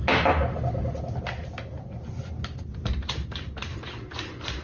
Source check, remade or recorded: recorded